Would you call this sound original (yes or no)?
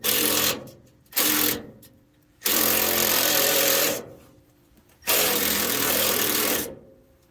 no